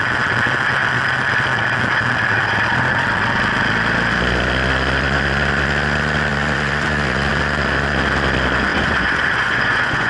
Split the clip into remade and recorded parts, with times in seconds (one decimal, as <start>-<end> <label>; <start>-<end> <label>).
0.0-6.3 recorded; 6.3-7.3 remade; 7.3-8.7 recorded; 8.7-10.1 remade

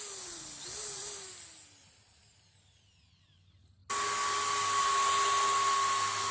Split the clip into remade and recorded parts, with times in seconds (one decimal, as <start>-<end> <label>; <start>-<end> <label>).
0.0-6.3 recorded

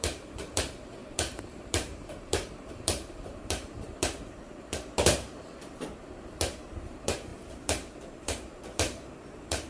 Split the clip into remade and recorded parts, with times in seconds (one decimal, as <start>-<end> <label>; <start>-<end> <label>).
0.0-9.7 remade

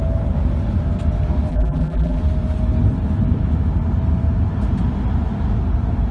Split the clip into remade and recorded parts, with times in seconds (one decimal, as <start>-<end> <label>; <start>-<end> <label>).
0.0-1.5 recorded; 1.5-2.2 remade; 2.2-6.1 recorded

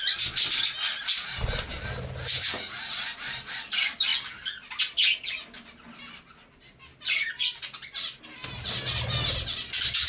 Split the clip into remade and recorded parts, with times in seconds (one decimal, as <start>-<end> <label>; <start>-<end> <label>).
0.0-10.1 recorded

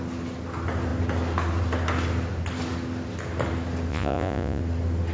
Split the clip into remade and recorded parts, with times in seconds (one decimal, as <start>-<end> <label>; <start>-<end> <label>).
0.0-3.9 recorded; 3.9-4.6 remade; 4.6-5.1 recorded

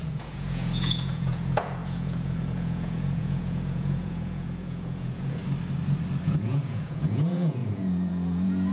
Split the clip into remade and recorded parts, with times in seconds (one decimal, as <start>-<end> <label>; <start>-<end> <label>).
0.0-5.4 remade; 5.4-6.2 recorded; 6.2-8.7 remade

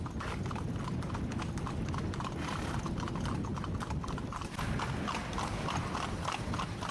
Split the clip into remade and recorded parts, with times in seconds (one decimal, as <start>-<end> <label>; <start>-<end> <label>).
0.0-6.9 recorded